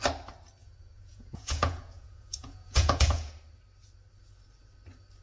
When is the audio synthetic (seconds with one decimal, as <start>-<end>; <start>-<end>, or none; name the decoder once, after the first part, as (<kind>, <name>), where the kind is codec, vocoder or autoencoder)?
0.6-3.3 (vocoder, Vocos)